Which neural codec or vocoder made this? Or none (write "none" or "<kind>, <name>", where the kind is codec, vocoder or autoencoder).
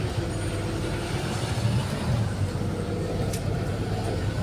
none